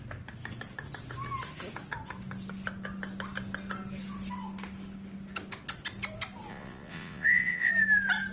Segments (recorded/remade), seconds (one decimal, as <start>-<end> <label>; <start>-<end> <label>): 0.0-6.5 recorded; 6.5-7.7 remade; 7.7-8.3 recorded